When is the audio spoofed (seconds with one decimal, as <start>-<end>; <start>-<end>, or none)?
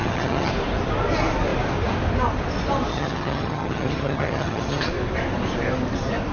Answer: 0.0-0.5; 2.9-4.9